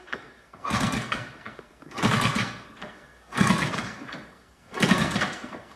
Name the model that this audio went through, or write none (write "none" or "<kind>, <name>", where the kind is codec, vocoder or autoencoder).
codec, SNAC